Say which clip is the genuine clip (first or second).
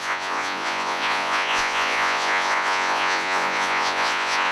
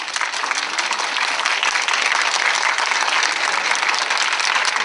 second